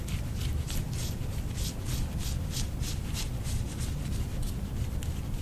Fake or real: real